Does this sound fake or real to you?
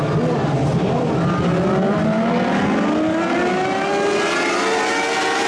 real